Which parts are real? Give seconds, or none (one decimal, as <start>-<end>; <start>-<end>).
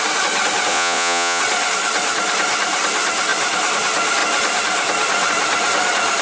0.0-0.7; 1.4-6.2